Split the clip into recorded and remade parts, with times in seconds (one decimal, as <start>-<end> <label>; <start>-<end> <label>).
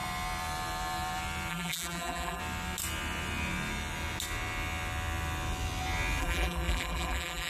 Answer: 0.0-1.5 recorded; 1.5-2.4 remade; 2.4-6.2 recorded; 6.2-7.5 remade